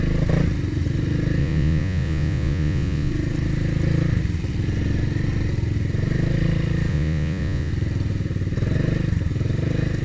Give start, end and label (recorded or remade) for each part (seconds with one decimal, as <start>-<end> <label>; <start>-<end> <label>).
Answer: 0.0-1.4 recorded; 1.4-3.1 remade; 3.1-6.9 recorded; 6.9-7.7 remade; 7.7-10.0 recorded